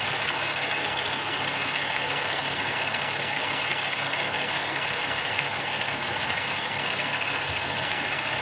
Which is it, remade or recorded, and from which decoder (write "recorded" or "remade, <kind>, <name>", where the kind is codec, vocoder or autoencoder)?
remade, codec, SNAC